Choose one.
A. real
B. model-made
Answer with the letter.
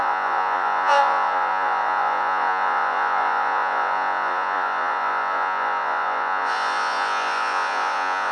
B